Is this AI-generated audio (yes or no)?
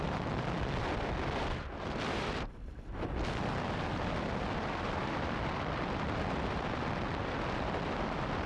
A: yes